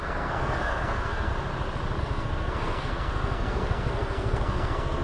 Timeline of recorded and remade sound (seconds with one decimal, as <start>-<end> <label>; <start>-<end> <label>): 0.0-1.3 remade; 1.3-2.0 recorded; 2.0-5.0 remade